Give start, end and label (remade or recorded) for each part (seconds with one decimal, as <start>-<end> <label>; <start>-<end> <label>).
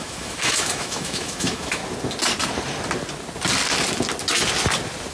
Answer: 0.0-1.8 remade; 1.8-5.1 recorded